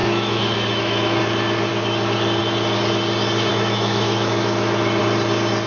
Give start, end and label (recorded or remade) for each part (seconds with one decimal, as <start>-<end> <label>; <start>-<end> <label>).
0.0-1.2 remade; 1.2-3.5 recorded; 3.5-5.0 remade; 5.0-5.7 recorded